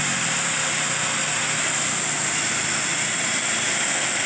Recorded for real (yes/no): yes